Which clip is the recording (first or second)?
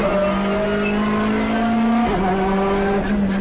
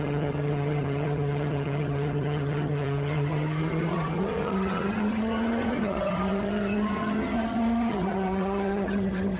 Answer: first